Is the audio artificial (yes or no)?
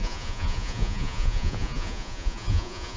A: yes